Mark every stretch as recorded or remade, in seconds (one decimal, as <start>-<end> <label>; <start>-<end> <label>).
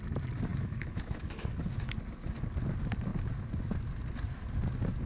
0.0-0.5 recorded; 0.5-1.9 remade; 1.9-5.1 recorded